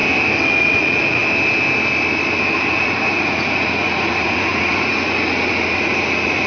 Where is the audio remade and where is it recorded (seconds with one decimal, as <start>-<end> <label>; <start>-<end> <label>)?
0.0-0.6 recorded; 0.6-1.2 remade; 1.2-2.7 recorded; 2.7-6.5 remade